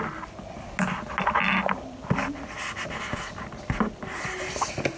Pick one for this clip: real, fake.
real